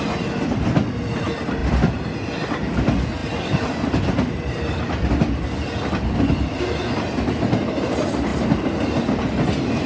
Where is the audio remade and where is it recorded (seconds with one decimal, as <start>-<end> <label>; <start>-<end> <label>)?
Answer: 0.0-9.9 recorded